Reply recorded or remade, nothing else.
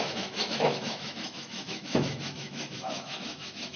remade